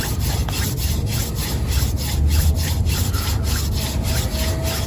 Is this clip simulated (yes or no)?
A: no